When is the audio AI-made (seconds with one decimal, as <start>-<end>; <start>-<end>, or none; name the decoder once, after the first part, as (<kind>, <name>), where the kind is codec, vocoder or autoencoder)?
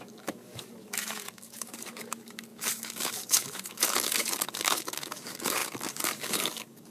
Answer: 0.0-6.9 (codec, DAC)